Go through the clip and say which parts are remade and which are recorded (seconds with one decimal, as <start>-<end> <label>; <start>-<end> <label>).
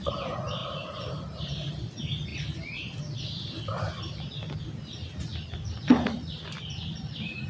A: 0.0-0.6 recorded; 0.6-1.2 remade; 1.2-5.3 recorded; 5.3-7.5 remade